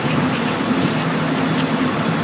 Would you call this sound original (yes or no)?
no